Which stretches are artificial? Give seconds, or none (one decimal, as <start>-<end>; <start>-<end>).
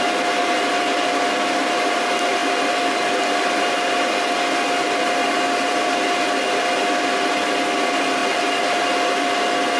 none